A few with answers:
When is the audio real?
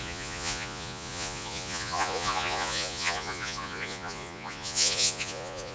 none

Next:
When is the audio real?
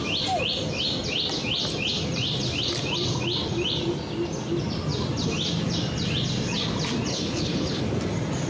0.0-7.1; 7.8-8.5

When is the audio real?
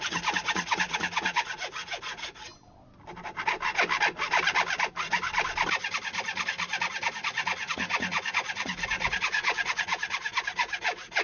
2.5-6.9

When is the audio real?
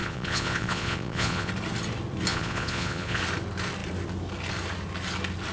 1.5-2.3; 3.2-5.5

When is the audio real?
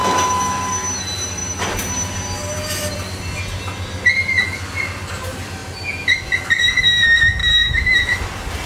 0.7-7.4; 8.2-8.7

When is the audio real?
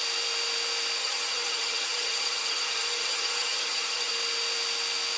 0.0-1.0; 4.1-5.2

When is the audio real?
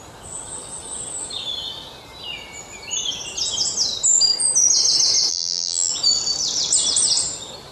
0.0-5.3; 5.9-7.7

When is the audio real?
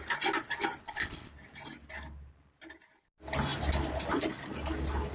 0.0-0.8; 1.3-5.1